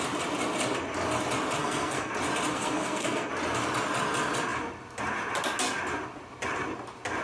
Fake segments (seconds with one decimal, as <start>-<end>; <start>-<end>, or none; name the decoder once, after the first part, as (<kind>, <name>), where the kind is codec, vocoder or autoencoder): 1.6-2.1 (codec, SNAC); 2.5-3.3